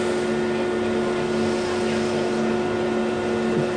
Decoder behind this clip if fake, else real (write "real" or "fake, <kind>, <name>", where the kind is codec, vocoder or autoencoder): real